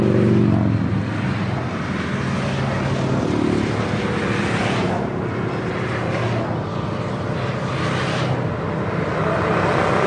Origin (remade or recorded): recorded